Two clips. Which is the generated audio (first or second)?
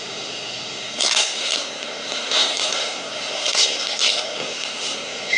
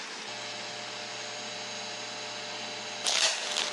first